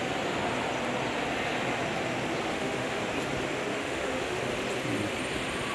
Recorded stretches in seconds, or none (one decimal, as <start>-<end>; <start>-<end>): 0.0-2.5; 3.0-3.7; 4.5-5.7